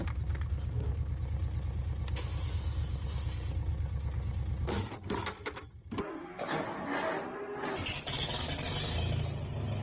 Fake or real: real